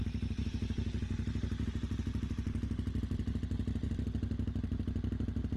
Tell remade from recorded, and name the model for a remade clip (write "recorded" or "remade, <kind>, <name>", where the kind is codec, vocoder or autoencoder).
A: recorded